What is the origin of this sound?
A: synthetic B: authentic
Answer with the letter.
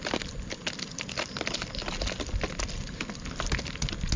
B